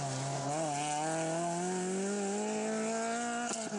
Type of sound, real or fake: real